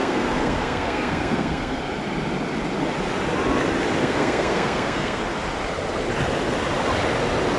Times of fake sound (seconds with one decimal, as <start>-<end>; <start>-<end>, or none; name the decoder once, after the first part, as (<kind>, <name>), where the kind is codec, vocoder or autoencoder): 0.0-1.8 (codec, SNAC); 4.0-5.2